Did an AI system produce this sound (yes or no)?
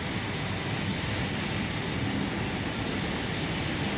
no